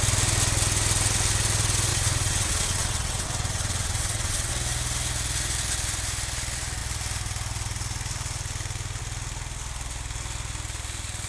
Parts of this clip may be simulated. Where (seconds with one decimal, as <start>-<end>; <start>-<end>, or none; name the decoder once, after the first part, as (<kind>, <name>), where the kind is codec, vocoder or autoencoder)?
1.9-4.5 (vocoder, WaveNeXt)